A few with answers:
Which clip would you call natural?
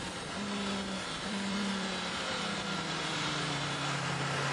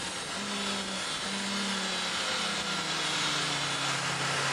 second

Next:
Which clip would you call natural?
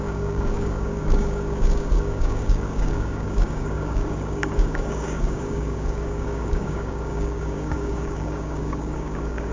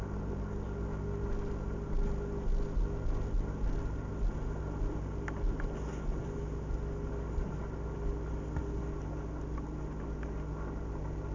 second